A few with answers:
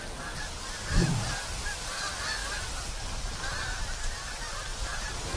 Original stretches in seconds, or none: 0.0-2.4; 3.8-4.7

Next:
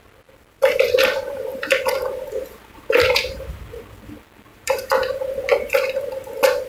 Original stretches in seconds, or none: 0.0-2.6; 3.6-4.5; 5.3-6.7

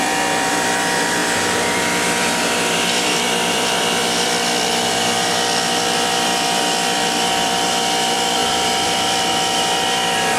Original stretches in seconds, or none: 4.0-5.8

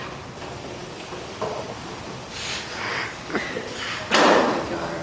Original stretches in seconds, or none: none

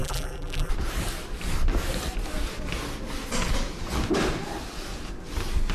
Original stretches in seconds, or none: 0.7-5.7

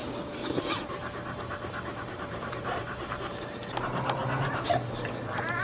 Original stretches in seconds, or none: 3.4-4.2; 4.7-5.6